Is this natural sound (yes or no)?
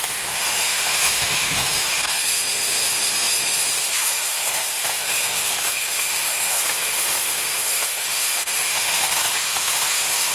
no